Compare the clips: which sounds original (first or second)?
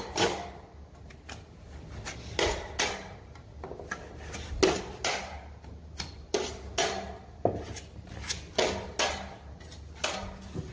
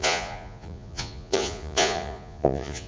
first